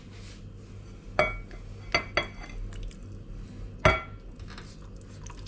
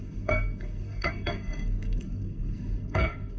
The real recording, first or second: first